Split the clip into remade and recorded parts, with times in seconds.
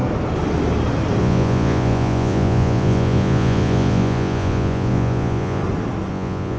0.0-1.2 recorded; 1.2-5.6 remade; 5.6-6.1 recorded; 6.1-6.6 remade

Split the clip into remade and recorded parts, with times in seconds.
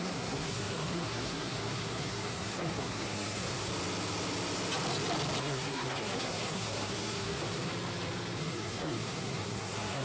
0.0-3.7 remade; 3.7-5.4 recorded; 5.4-7.7 remade; 7.7-8.4 recorded; 8.4-10.0 remade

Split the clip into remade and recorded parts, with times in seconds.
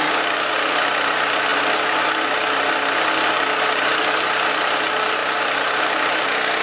0.0-6.6 recorded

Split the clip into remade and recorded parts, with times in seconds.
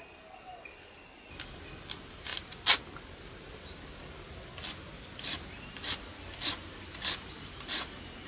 0.0-8.3 recorded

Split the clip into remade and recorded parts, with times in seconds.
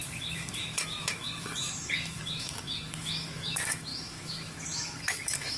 0.0-5.6 remade